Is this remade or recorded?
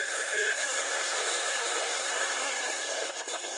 remade